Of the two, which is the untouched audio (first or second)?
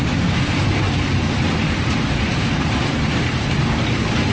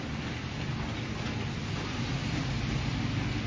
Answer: second